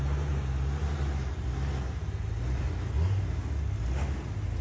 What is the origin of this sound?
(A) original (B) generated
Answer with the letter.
A